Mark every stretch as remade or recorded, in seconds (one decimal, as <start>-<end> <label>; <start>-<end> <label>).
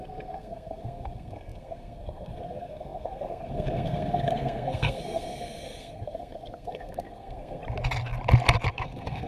0.0-7.6 remade; 7.6-8.7 recorded; 8.7-9.3 remade